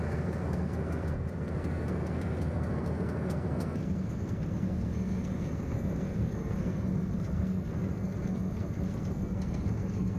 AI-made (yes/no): yes